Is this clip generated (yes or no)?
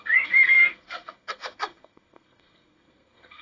yes